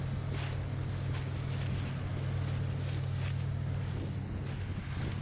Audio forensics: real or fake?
real